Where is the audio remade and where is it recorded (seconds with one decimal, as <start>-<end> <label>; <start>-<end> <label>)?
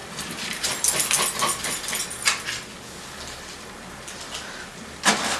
0.0-0.8 remade; 0.8-5.4 recorded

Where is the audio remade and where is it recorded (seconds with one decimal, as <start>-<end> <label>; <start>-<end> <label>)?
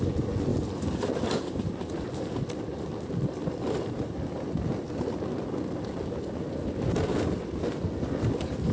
0.0-0.5 recorded; 0.5-1.7 remade; 1.7-3.4 recorded; 3.4-4.0 remade; 4.0-8.7 recorded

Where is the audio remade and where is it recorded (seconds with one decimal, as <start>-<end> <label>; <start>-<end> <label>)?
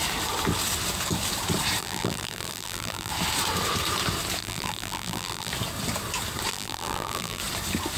0.0-1.8 recorded; 1.8-3.1 remade; 3.1-4.4 recorded; 4.4-5.5 remade; 5.5-6.5 recorded; 6.5-7.4 remade; 7.4-8.0 recorded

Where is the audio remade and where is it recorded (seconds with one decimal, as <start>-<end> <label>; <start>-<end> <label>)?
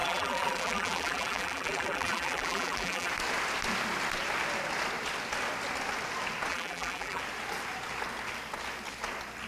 0.0-3.1 remade; 3.1-6.5 recorded; 6.5-7.2 remade; 7.2-9.5 recorded